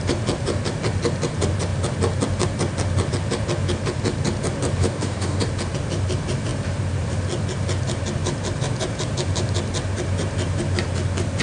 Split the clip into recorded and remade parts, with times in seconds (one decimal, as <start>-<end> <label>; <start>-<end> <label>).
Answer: 0.0-4.8 recorded; 4.8-5.4 remade; 5.4-11.4 recorded